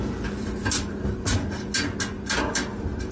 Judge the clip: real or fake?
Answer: real